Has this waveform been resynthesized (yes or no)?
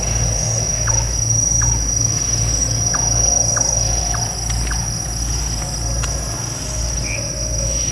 no